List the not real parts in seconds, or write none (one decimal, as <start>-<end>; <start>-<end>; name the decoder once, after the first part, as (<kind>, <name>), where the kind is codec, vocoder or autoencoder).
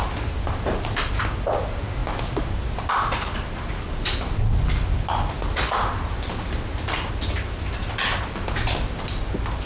none